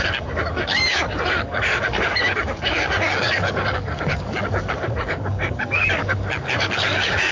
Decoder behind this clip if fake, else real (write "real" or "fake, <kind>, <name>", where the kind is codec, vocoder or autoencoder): fake, codec, DAC